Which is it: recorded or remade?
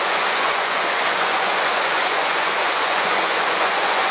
remade